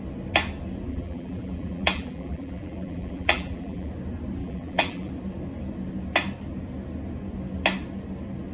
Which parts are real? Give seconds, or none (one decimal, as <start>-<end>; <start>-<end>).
0.0-0.9; 3.9-4.4; 5.1-8.5